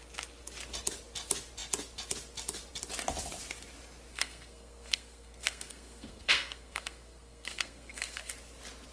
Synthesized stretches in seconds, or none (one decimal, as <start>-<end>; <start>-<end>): 4.1-8.3